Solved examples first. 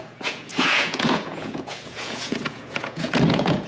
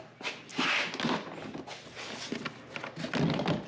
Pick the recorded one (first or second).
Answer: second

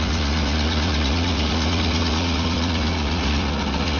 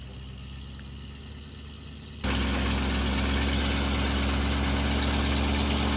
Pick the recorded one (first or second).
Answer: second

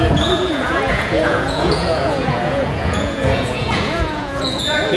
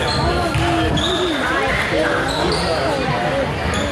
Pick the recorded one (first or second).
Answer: second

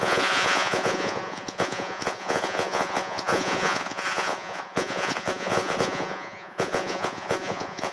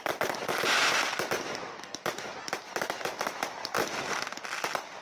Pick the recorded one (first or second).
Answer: second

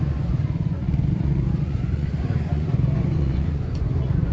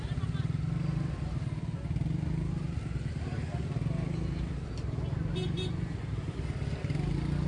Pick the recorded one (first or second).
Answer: second